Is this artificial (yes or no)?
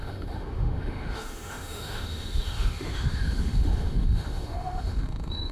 yes